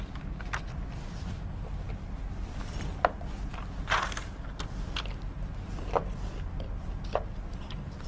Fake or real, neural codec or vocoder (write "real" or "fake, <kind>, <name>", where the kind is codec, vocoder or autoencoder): real